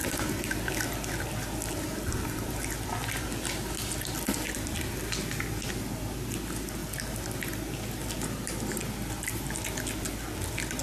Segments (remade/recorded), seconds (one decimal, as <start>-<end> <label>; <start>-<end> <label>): 0.0-10.8 recorded